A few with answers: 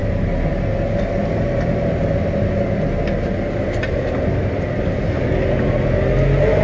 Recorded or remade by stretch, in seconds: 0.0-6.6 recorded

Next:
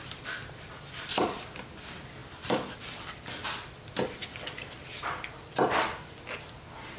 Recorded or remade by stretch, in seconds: 0.0-7.0 recorded

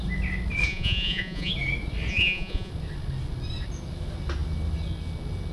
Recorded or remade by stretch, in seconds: 0.0-0.7 recorded; 0.7-1.5 remade; 1.5-2.1 recorded; 2.1-2.7 remade; 2.7-5.5 recorded

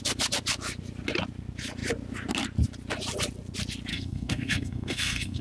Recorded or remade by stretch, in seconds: 0.0-3.9 recorded; 3.9-5.4 remade

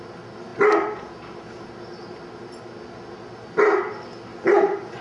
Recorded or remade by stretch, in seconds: 0.0-5.0 recorded

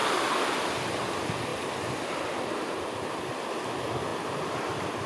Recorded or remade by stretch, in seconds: 0.0-5.1 recorded